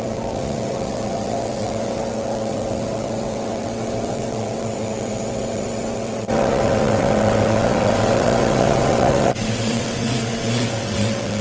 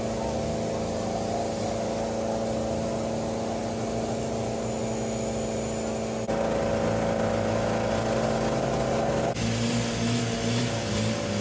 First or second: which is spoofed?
first